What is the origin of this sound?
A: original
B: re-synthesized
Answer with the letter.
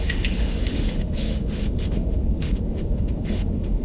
B